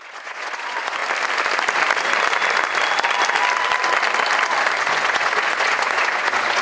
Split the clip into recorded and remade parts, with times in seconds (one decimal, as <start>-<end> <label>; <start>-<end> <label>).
0.0-1.0 remade; 1.0-4.8 recorded; 4.8-6.6 remade